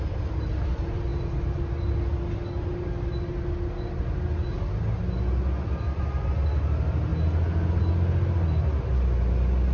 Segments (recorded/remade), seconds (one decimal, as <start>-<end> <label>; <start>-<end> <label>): 0.0-9.7 recorded